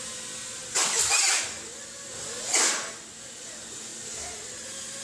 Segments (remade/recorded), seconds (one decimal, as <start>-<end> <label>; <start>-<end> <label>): 0.0-0.8 recorded; 0.8-2.7 remade; 2.7-3.9 recorded; 3.9-5.0 remade